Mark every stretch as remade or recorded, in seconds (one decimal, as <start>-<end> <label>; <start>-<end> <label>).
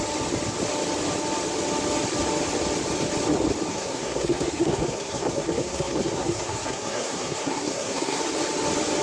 0.0-3.7 recorded; 3.7-8.2 remade; 8.2-9.0 recorded